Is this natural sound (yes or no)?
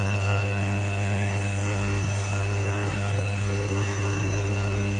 no